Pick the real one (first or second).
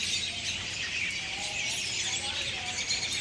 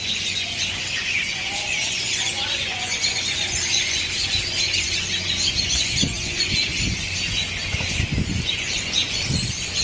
first